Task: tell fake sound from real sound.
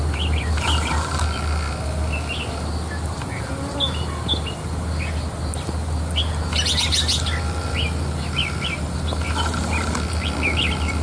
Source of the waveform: real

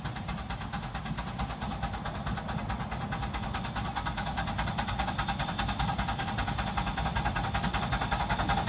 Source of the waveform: real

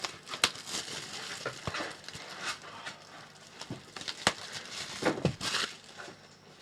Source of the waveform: real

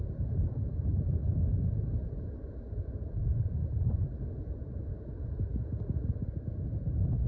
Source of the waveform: real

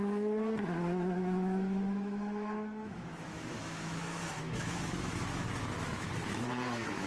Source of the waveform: fake